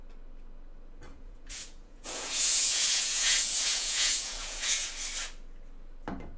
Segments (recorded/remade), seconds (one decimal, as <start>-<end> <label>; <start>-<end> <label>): 0.0-1.1 recorded; 1.1-4.9 remade; 4.9-6.4 recorded